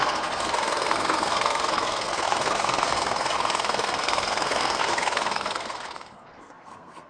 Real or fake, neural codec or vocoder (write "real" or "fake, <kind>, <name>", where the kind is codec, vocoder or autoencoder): fake, codec, SNAC